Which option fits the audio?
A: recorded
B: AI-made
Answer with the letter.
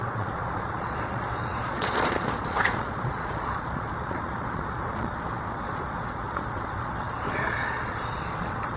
B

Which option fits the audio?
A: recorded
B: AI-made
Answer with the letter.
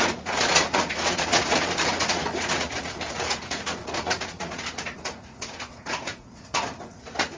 B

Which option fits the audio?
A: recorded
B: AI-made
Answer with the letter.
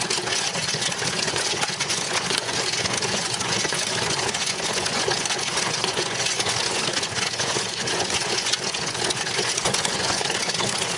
B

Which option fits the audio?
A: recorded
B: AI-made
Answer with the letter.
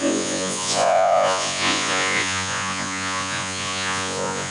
B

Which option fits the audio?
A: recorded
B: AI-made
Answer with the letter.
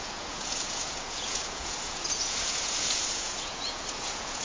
B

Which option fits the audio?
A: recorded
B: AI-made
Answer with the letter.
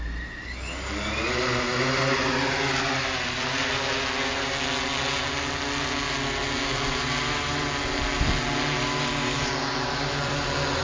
A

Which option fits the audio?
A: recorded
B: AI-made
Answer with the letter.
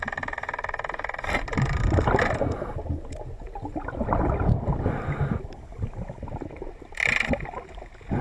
A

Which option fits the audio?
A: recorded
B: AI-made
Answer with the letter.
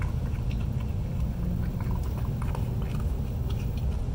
A